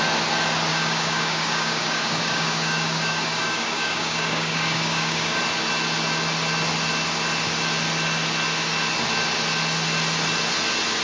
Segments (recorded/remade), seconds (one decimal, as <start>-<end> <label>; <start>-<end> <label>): 0.0-0.7 recorded; 0.7-5.4 remade; 5.4-11.0 recorded

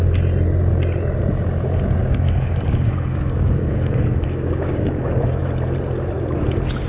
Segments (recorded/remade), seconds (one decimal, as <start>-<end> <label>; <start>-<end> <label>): 0.0-2.0 recorded; 2.0-5.4 remade; 5.4-6.9 recorded

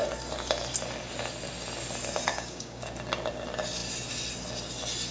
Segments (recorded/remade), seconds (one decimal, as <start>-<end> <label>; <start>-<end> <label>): 0.0-2.3 recorded; 2.3-2.9 remade; 2.9-5.1 recorded

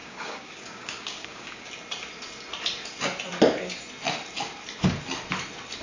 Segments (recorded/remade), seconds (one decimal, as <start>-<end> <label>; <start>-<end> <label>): 0.0-1.7 remade; 1.7-5.8 recorded

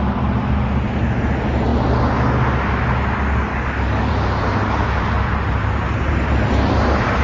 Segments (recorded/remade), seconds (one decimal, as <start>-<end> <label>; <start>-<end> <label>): 0.0-3.5 recorded; 3.5-4.1 remade; 4.1-7.2 recorded

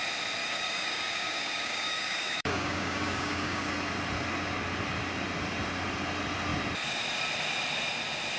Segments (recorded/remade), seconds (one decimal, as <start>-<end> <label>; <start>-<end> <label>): 0.0-0.4 recorded; 0.4-3.7 remade; 3.7-8.4 recorded

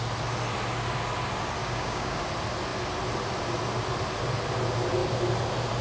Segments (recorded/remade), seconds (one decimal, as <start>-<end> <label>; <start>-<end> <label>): 0.0-1.6 recorded; 1.6-2.2 remade; 2.2-5.8 recorded